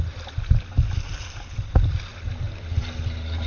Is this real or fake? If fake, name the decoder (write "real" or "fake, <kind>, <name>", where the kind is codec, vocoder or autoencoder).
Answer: real